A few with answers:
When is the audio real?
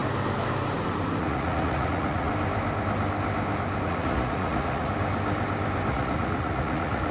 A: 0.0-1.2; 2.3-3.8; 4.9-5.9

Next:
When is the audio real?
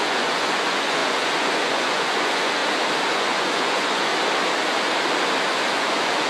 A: 2.6-3.1; 4.1-5.5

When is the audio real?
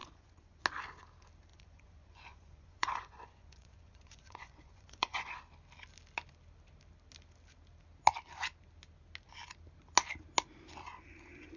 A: 0.6-1.5; 5.4-11.6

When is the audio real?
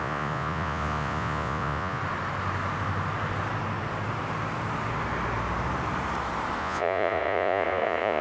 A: 2.0-6.6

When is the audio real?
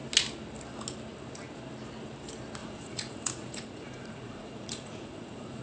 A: 0.0-2.6